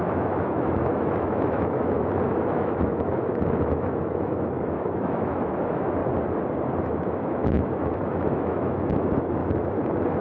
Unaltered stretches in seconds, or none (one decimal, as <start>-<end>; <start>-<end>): 6.0-6.8; 9.4-10.2